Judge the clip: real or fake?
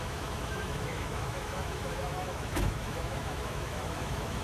fake